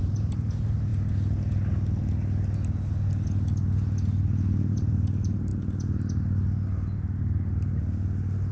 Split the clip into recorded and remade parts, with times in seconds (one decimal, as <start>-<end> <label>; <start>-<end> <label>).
0.0-0.9 remade; 0.9-4.7 recorded; 4.7-5.5 remade; 5.5-8.5 recorded